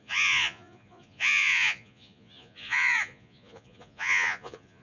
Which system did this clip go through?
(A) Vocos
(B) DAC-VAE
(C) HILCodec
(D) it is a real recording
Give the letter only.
A